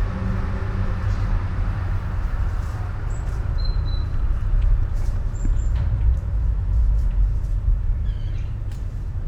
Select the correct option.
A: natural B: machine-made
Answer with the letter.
B